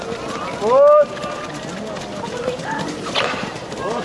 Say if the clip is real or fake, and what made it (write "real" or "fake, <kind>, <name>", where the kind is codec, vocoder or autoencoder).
real